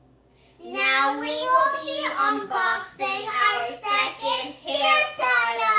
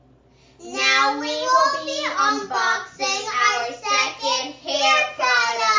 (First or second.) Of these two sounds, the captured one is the second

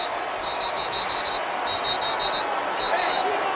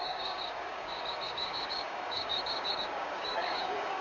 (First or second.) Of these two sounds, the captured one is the first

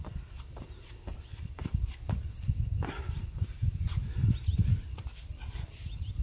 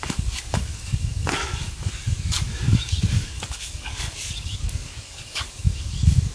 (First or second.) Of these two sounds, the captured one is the first